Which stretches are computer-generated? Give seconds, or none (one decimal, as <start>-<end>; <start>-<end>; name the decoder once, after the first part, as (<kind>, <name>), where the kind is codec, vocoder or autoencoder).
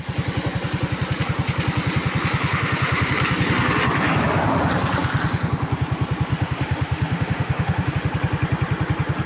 2.4-3.1 (autoencoder, DAC-VAE); 6.3-7.9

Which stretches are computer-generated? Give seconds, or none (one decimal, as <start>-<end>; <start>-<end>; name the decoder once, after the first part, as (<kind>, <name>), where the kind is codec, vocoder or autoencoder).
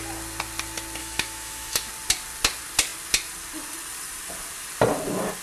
1.0-1.9 (autoencoder, DAC-VAE)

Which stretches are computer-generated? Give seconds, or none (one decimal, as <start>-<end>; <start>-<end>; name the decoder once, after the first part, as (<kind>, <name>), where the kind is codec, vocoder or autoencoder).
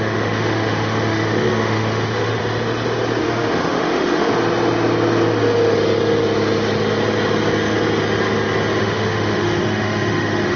0.0-2.4 (autoencoder, DAC-VAE); 3.2-4.3; 8.8-10.6